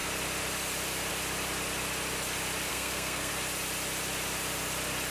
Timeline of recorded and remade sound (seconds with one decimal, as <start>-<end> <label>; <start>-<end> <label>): 0.0-2.7 recorded; 2.7-3.3 remade; 3.3-5.1 recorded